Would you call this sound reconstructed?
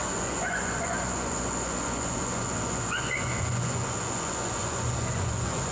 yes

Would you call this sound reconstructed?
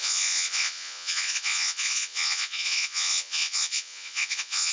yes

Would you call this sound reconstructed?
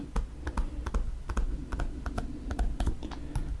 no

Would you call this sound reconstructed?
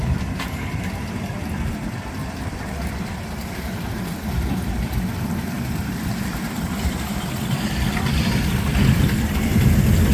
yes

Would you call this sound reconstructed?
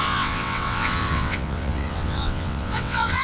yes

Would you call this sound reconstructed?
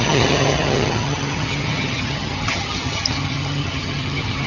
yes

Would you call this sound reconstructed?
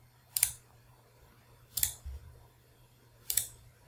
yes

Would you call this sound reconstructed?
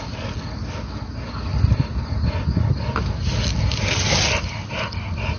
no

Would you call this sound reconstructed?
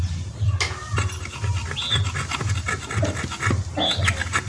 no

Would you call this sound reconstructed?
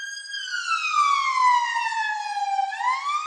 no